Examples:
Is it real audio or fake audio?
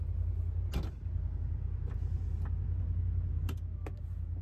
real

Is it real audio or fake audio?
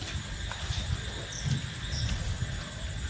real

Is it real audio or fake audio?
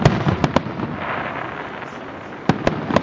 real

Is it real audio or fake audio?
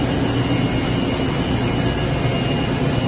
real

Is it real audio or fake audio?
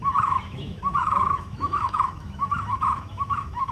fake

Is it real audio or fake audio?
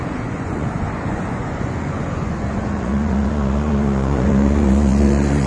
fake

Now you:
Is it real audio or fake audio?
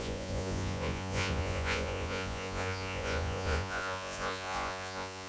fake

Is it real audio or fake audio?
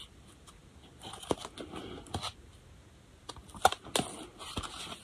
real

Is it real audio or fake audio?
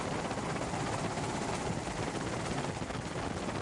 real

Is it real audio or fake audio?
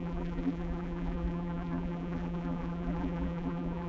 fake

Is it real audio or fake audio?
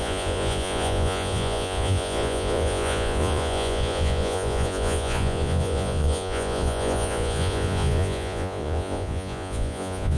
fake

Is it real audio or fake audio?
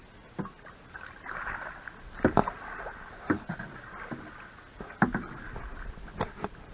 real